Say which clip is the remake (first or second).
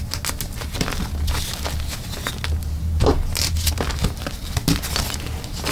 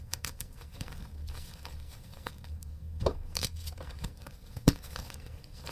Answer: second